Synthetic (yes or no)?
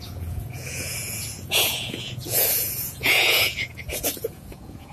yes